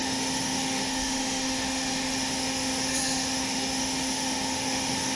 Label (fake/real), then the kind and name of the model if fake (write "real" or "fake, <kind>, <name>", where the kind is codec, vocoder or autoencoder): fake, autoencoder, DAC-VAE